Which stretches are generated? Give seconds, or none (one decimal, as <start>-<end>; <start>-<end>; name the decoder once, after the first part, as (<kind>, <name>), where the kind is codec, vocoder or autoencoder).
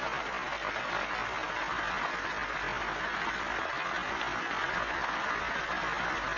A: none